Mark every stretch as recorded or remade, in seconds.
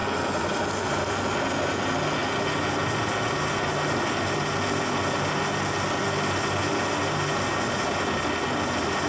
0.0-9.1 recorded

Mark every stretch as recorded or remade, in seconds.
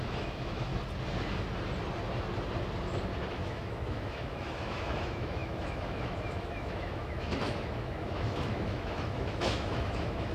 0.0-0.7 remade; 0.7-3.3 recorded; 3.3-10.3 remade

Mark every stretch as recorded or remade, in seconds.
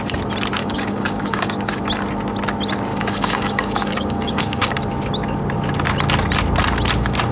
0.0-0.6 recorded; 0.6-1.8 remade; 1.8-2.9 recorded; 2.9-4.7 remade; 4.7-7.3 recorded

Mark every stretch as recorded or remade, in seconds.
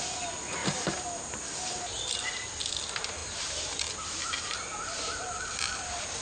0.0-6.2 recorded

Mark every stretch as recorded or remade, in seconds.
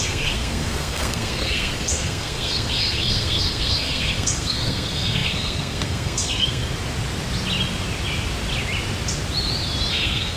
0.0-6.6 remade; 6.6-9.9 recorded; 9.9-10.4 remade